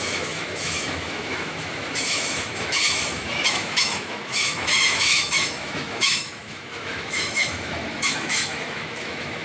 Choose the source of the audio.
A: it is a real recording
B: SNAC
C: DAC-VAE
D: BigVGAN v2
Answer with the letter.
C